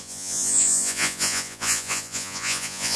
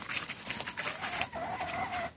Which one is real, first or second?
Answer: second